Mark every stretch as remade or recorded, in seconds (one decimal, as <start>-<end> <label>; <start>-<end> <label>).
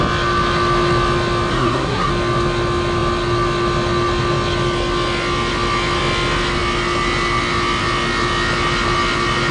0.0-1.5 recorded; 1.5-2.1 remade; 2.1-9.5 recorded